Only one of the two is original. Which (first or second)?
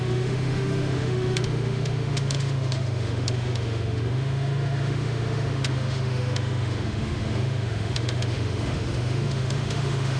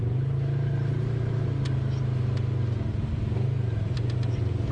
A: second